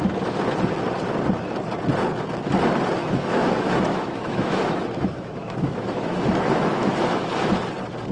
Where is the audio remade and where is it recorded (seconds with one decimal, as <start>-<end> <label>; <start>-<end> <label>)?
0.0-3.0 recorded; 3.0-7.3 remade; 7.3-8.1 recorded